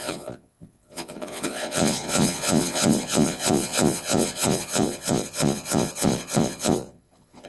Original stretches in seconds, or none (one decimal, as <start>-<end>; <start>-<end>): none